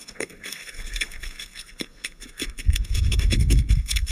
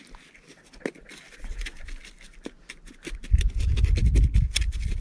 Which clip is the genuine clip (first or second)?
second